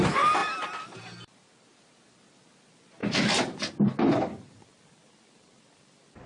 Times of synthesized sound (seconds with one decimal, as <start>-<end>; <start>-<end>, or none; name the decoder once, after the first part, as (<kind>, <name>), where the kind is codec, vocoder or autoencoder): 0.4-1.0 (vocoder, BigVGAN v2)